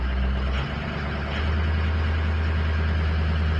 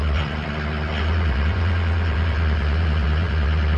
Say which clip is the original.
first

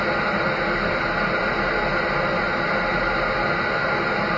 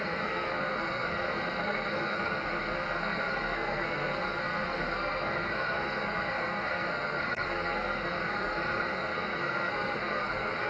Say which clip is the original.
first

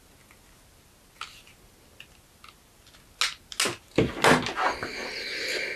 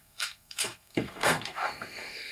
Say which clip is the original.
first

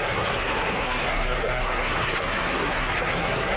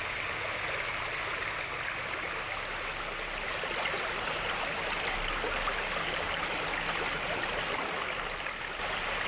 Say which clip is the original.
second